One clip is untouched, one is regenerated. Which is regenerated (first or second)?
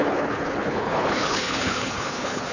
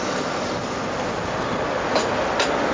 first